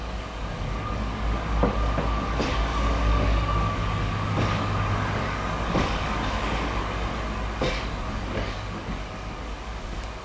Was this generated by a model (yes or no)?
yes